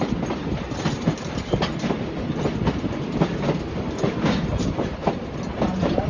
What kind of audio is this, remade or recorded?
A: recorded